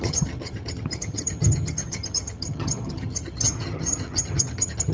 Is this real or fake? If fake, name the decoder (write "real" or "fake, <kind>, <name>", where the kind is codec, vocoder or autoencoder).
fake, vocoder, HiFi-GAN